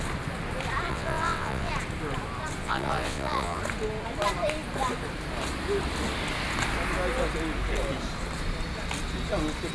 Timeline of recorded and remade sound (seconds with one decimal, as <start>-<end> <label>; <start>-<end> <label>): 0.0-0.9 recorded; 0.9-1.7 remade; 1.7-2.6 recorded; 2.6-3.6 remade; 3.6-9.7 recorded